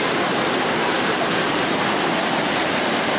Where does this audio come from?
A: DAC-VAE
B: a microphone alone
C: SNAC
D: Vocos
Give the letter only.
B